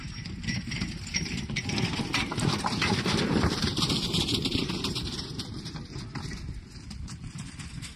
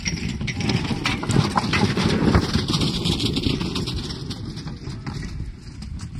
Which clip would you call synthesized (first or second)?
first